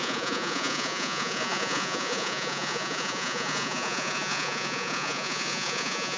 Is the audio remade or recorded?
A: remade